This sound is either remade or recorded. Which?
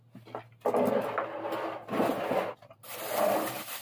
recorded